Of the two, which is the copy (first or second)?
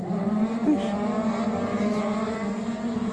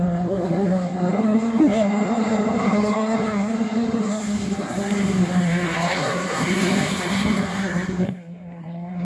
second